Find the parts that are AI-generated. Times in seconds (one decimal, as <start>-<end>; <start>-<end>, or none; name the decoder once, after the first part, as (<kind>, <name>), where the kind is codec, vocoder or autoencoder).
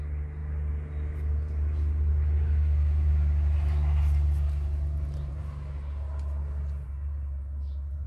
none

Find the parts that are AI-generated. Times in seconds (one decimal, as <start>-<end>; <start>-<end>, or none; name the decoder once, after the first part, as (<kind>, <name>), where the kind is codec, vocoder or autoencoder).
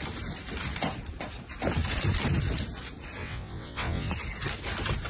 3.2-4.1 (vocoder, WaveNeXt)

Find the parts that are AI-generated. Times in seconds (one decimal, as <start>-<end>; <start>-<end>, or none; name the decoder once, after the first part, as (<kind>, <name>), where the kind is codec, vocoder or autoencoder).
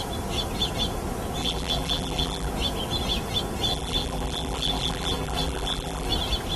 1.4-2.5 (vocoder, BigVGAN v2); 3.7-6.1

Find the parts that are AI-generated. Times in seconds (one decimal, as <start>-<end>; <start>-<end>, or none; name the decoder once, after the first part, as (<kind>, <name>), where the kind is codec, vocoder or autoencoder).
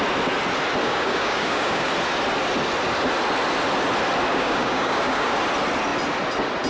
0.8-1.9 (codec, DAC); 4.3-5.4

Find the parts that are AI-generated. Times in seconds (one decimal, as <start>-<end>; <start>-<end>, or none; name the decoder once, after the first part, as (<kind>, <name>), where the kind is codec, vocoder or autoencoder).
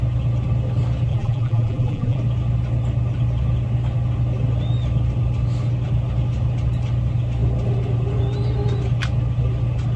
1.1-2.2 (vocoder, BigVGAN v2)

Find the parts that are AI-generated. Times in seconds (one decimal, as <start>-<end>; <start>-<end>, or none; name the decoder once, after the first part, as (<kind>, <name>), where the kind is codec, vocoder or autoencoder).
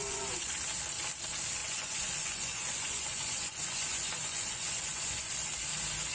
0.0-0.5 (vocoder, Vocos); 1.6-5.3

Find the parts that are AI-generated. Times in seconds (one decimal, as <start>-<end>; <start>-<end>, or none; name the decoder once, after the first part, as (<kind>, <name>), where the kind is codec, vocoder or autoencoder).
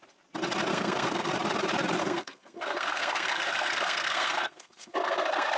0.7-1.3 (codec, SNAC); 2.0-5.6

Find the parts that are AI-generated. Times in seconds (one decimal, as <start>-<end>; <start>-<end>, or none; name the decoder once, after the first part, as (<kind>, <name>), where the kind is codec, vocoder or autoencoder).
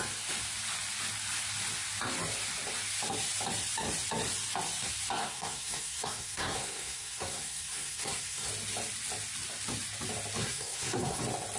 5.2-8.5 (codec, SNAC); 10.4-11.2